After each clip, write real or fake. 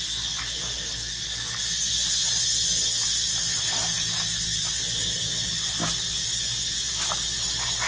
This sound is real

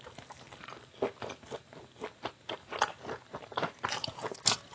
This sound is real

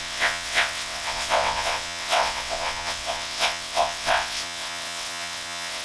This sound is fake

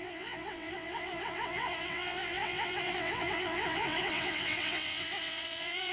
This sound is fake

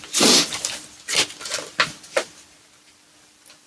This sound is real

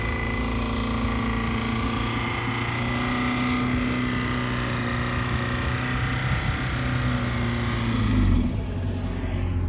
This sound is real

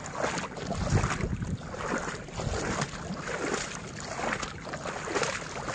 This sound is real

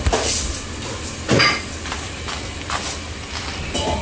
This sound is real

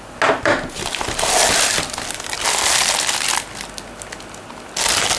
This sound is real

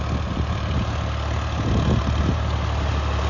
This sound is real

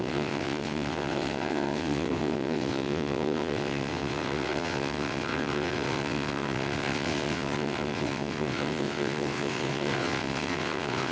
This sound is fake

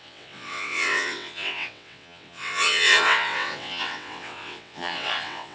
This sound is fake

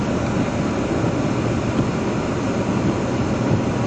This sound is real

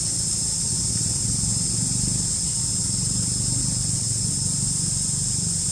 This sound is real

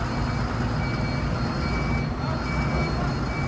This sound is real